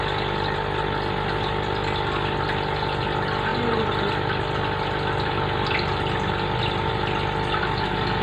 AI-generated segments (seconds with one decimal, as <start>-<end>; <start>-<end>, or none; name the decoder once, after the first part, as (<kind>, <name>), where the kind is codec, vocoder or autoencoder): 3.5-6.9 (vocoder, BigVGAN v2)